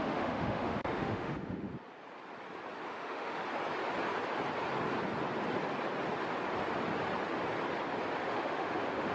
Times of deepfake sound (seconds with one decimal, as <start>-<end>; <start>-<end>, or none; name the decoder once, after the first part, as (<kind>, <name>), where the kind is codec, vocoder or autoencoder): 0.0-1.7 (autoencoder, DAC-VAE); 2.9-3.4; 8.3-9.1